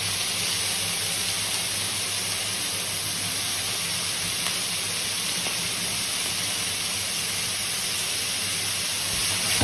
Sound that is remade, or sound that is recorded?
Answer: recorded